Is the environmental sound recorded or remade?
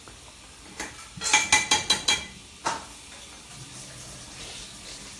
recorded